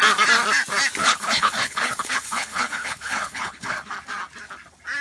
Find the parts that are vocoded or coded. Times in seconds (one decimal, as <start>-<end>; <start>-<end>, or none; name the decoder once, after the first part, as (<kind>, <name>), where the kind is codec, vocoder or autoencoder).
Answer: 1.0-3.9 (codec, HILCodec)